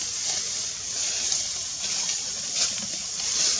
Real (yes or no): yes